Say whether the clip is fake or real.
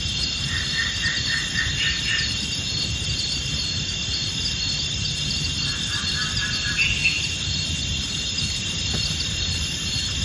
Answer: real